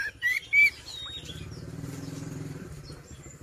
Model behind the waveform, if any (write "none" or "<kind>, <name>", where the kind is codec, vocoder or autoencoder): vocoder, BigVGAN v2